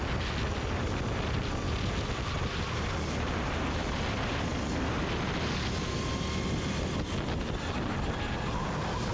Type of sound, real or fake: real